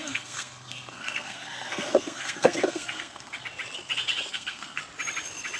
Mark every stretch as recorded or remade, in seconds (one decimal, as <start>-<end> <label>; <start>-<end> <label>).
0.0-3.4 remade; 3.4-4.3 recorded; 4.3-4.8 remade; 4.8-5.6 recorded